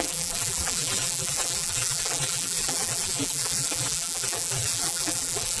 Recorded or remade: remade